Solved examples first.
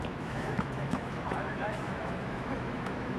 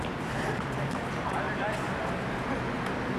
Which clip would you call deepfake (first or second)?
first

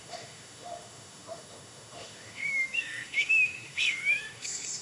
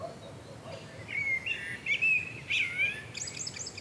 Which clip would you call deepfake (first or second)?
first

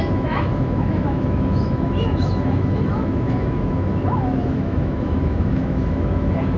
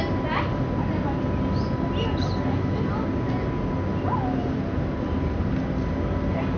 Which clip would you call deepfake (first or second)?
first